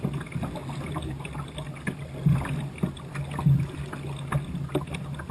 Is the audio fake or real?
real